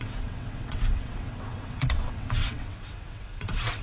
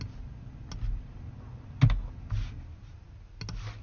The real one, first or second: second